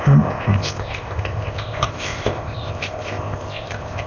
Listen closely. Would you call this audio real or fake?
fake